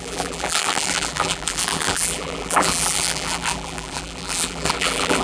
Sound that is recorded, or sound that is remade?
remade